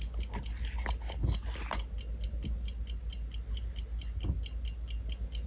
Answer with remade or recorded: recorded